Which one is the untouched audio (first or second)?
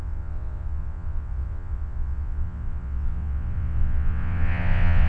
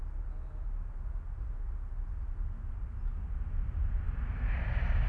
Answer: second